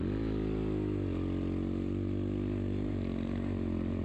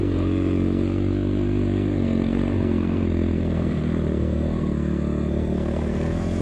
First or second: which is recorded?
first